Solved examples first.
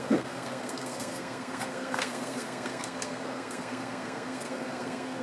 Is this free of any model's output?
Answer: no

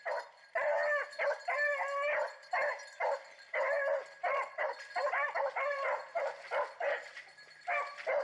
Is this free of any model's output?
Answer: yes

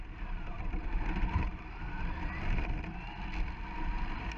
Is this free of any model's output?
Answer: no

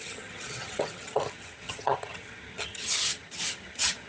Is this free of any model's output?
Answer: no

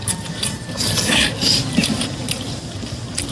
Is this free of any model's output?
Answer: no